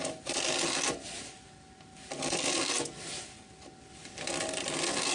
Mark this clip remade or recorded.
recorded